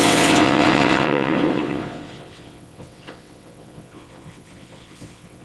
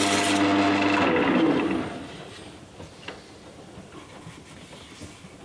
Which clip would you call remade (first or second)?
first